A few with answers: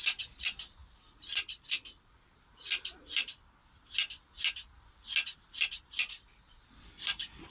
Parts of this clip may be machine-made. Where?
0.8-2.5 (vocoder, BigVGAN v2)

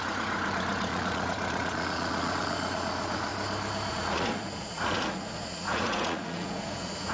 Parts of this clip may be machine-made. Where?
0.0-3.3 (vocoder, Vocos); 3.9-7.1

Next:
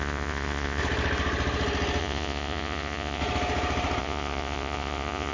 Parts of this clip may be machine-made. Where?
0.0-0.8 (vocoder, Vocos); 2.0-3.2; 4.0-5.3

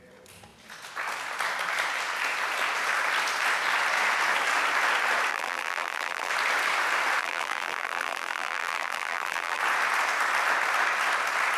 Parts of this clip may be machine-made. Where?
5.3-6.3 (vocoder, BigVGAN v2); 7.2-9.6